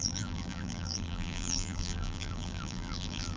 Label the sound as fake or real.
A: fake